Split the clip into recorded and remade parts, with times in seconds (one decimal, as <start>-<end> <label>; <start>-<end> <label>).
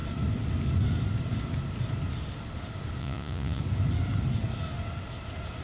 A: 0.0-3.0 recorded; 3.0-3.6 remade; 3.6-5.6 recorded